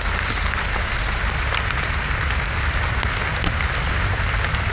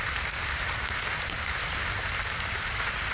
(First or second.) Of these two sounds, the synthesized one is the second